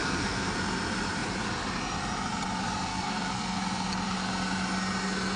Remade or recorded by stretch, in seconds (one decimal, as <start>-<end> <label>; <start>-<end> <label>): 0.0-0.5 remade; 0.5-2.9 recorded; 2.9-3.6 remade; 3.6-5.4 recorded